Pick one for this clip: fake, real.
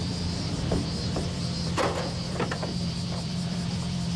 fake